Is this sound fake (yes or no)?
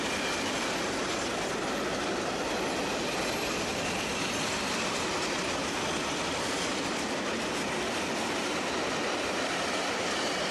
no